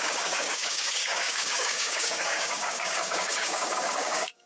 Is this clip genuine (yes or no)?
no